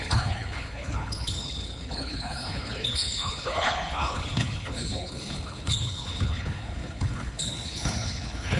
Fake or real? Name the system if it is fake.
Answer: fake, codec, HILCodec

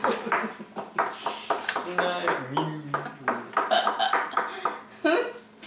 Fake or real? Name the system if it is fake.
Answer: real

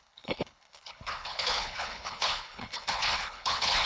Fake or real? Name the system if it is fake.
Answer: fake, codec, HILCodec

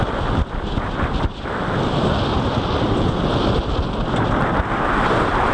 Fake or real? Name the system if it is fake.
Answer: real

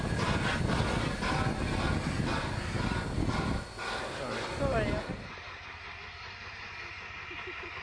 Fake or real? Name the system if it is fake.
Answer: real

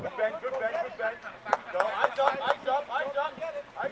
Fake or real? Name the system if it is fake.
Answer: real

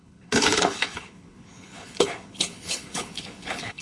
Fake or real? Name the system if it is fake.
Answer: fake, codec, HILCodec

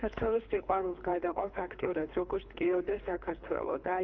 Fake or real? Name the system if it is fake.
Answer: fake, codec, HILCodec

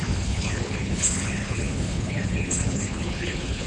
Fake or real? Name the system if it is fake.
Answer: fake, codec, HILCodec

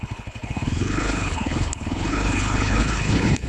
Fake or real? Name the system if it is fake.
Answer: fake, codec, HILCodec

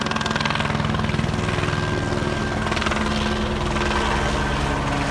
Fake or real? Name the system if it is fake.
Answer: real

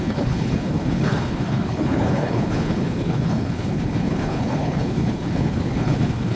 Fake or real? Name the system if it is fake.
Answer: fake, codec, HILCodec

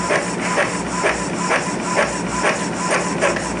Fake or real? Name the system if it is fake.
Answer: real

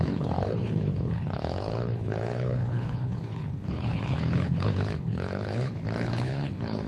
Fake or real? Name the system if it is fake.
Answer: fake, codec, HILCodec